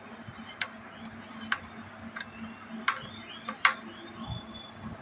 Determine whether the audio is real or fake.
real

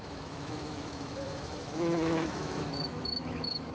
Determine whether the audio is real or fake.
fake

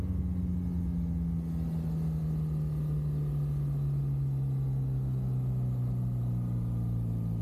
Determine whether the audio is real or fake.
real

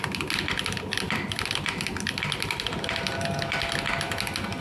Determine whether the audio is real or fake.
real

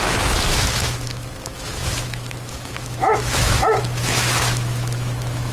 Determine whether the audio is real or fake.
fake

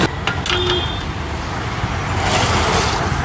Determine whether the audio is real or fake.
real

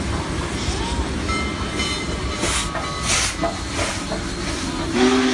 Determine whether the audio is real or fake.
real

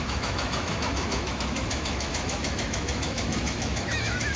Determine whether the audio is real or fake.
fake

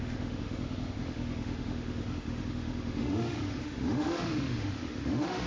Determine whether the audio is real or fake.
fake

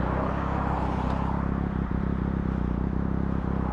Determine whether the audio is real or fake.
real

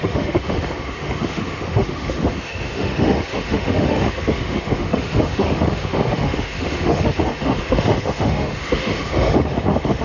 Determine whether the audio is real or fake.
fake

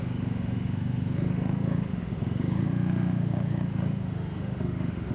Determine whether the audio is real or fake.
fake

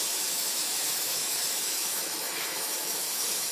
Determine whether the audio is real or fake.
fake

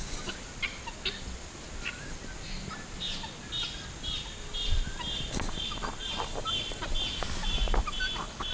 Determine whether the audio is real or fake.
real